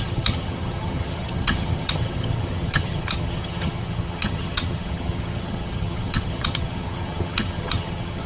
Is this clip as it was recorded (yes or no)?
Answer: no